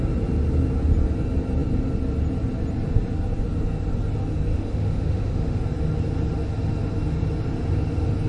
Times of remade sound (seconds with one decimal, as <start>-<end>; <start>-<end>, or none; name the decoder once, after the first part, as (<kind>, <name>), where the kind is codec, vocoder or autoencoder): 4.5-5.6 (autoencoder, DAC-VAE)